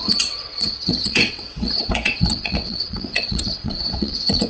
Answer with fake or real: fake